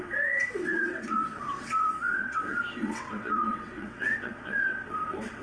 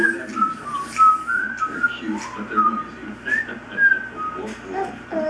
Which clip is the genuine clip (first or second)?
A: second